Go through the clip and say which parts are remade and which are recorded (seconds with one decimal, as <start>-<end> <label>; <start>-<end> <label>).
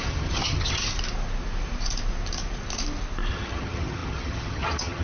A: 0.0-0.9 remade; 0.9-3.3 recorded; 3.3-5.0 remade